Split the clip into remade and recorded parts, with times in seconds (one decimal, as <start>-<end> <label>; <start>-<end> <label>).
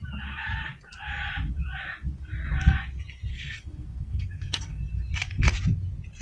0.0-3.3 recorded; 3.3-4.8 remade; 4.8-6.2 recorded